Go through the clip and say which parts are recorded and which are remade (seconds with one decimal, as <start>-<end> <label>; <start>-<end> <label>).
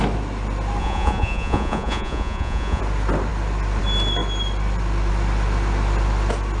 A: 0.0-0.8 recorded; 0.8-2.8 remade; 2.8-6.6 recorded